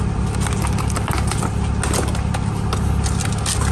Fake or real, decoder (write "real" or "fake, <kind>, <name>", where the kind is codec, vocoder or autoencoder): real